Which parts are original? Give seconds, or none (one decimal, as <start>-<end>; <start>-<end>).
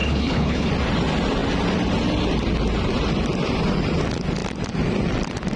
0.7-5.6